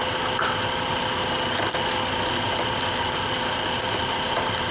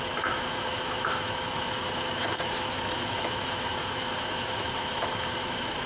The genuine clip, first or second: first